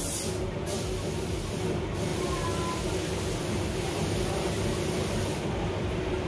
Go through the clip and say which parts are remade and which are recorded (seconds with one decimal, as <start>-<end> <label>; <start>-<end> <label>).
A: 0.0-2.1 remade; 2.1-3.4 recorded; 3.4-6.3 remade